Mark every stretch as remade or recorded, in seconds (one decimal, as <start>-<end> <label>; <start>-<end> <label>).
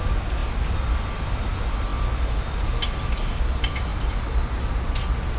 0.0-5.4 recorded